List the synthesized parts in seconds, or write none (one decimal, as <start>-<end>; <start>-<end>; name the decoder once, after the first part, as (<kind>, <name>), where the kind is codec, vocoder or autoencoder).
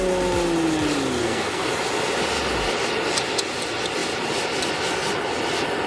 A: 1.2-1.7 (codec, SNAC)